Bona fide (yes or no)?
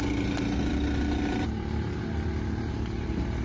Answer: yes